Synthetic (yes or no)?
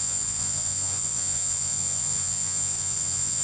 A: yes